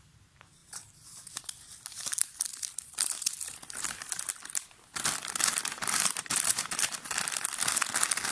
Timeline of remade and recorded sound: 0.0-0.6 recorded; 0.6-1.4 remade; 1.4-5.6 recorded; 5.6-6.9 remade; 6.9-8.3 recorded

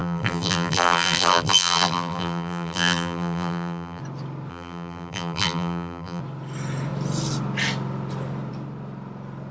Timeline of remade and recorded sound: 0.0-4.0 remade; 4.0-4.5 recorded; 4.5-6.2 remade; 6.2-9.5 recorded

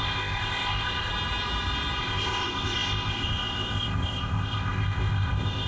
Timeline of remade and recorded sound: 0.0-1.1 remade; 1.1-2.0 recorded; 2.0-5.7 remade

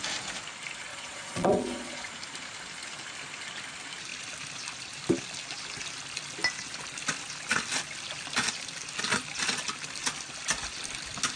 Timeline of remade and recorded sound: 0.0-0.9 recorded; 0.9-2.1 remade; 2.1-11.4 recorded